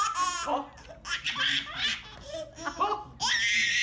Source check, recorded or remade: recorded